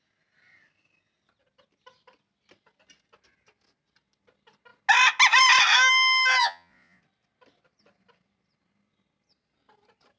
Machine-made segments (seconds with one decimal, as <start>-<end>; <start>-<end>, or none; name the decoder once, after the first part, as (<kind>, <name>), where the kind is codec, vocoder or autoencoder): 6.4-7.0 (vocoder, Vocos)